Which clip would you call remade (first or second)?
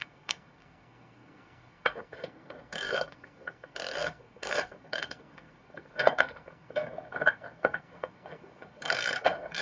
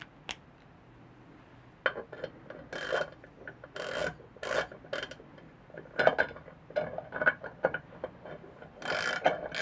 first